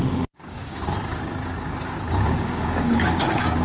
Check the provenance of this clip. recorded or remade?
remade